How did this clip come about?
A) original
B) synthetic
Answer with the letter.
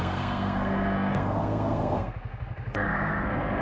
B